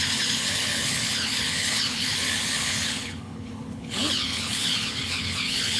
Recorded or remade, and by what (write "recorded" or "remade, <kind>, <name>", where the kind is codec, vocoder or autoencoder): remade, codec, HILCodec